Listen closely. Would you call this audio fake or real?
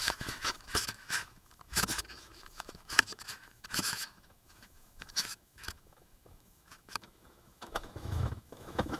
fake